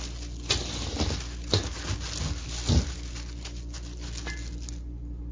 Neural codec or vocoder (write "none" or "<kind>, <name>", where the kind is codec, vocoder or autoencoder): none